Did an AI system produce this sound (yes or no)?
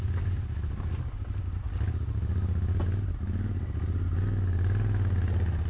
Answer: no